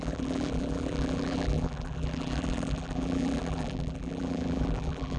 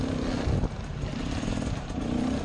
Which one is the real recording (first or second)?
second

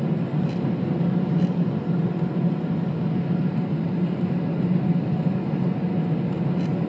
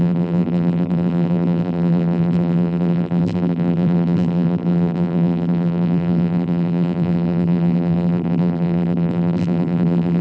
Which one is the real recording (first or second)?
first